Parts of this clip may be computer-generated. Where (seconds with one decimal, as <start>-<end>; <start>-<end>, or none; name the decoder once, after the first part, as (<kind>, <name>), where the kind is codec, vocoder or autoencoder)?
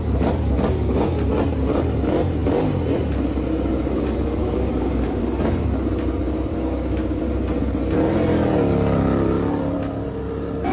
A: 4.4-5.2 (codec, DAC); 6.5-7.2